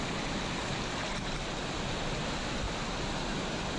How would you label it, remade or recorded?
recorded